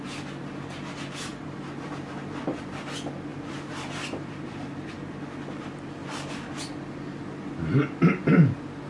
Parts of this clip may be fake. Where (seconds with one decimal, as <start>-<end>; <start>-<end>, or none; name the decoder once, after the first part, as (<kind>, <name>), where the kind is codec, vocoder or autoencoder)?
1.3-2.7 (vocoder, BigVGAN v2); 3.3-5.0